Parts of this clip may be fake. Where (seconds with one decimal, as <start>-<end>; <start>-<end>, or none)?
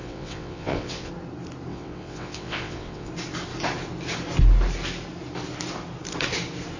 0.0-1.1; 1.7-3.1